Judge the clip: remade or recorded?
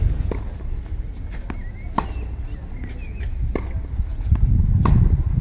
recorded